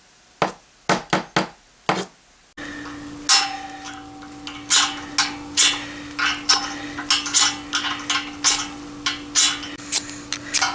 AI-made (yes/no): no